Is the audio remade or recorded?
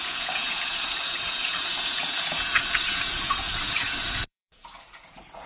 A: remade